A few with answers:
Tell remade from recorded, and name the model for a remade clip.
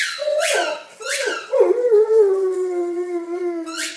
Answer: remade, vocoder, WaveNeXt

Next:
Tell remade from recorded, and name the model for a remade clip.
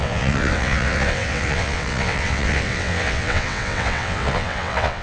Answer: remade, vocoder, WaveNeXt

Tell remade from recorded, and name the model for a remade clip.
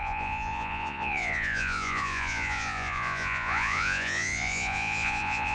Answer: remade, vocoder, Vocos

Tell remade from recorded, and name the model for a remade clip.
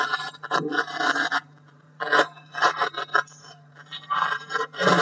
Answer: remade, vocoder, BigVGAN v2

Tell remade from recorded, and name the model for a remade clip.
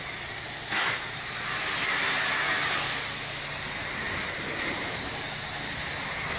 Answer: recorded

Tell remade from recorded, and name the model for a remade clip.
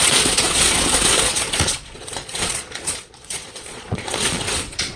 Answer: remade, vocoder, Vocos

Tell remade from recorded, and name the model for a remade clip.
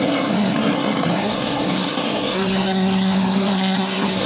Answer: remade, codec, SNAC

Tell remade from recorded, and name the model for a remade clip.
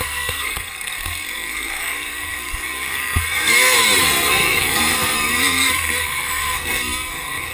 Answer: remade, codec, SNAC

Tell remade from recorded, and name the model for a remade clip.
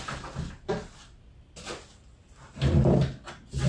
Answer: recorded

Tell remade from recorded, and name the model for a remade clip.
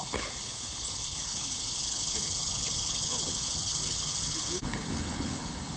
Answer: remade, codec, HILCodec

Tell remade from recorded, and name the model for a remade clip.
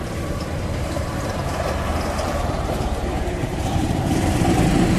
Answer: remade, vocoder, BigVGAN v2